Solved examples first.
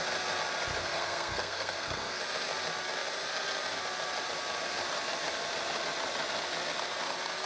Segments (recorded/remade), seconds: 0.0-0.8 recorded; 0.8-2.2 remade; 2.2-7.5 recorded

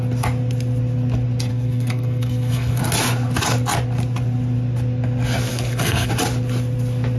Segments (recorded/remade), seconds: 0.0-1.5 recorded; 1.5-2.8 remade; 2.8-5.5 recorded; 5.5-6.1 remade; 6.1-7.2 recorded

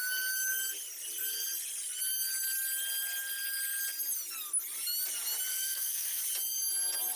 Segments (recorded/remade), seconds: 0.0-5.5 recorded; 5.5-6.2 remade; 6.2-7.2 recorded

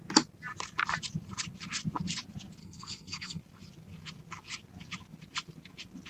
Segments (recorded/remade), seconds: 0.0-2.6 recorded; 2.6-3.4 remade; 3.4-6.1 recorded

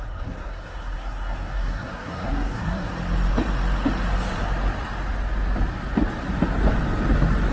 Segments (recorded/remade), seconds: 0.0-2.9 remade; 2.9-7.5 recorded